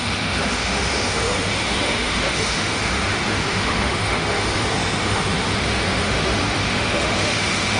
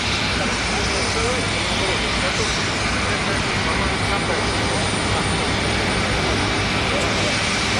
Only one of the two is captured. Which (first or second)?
second